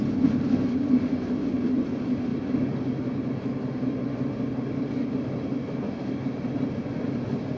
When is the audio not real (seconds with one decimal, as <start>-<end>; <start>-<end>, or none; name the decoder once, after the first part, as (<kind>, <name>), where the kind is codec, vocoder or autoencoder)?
none